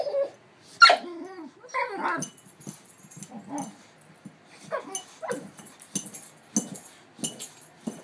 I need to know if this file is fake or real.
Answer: real